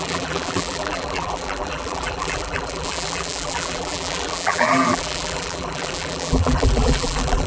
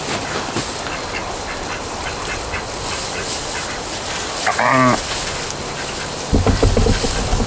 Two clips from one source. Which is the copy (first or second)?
first